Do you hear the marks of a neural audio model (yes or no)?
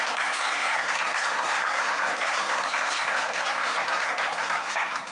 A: yes